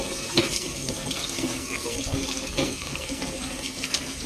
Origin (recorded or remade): remade